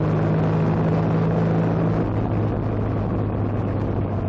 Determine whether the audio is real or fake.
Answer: real